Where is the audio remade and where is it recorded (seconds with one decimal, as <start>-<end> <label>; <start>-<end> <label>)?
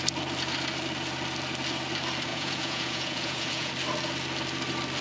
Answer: 0.0-2.3 recorded; 2.3-3.7 remade; 3.7-5.0 recorded